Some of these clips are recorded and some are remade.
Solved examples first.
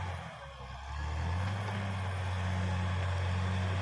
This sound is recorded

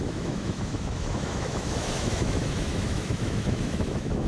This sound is remade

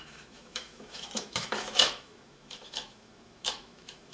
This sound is remade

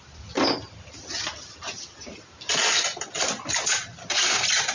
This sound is recorded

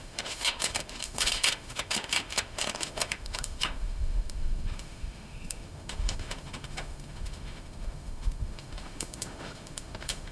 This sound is remade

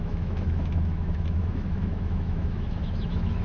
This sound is remade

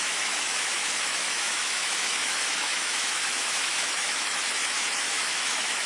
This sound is remade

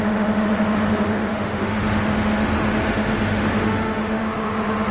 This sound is remade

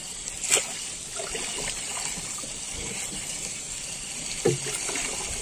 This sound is recorded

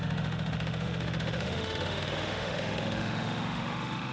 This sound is remade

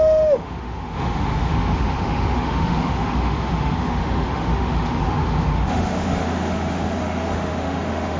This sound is remade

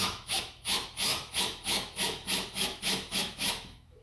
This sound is remade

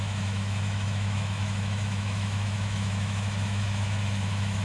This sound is remade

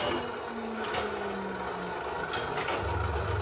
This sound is recorded